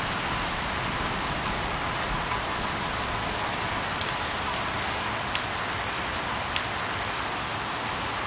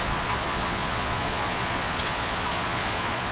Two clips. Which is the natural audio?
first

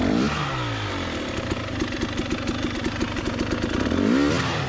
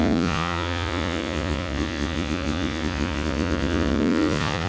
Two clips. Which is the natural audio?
first